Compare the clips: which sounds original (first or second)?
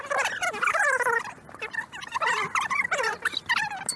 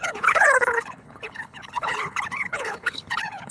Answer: first